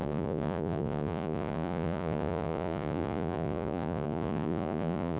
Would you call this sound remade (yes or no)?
yes